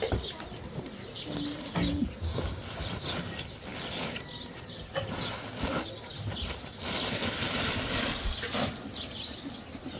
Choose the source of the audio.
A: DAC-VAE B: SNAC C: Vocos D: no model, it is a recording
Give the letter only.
D